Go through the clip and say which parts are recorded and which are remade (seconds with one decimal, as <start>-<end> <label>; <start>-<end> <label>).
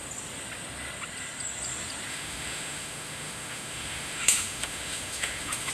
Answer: 0.0-2.1 recorded; 2.1-5.7 remade